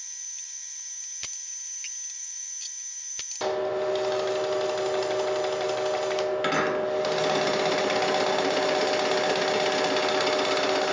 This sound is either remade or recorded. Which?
recorded